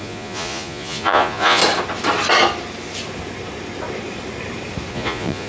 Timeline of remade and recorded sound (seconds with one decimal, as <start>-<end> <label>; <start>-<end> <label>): 0.0-1.6 remade; 1.6-4.9 recorded; 4.9-5.5 remade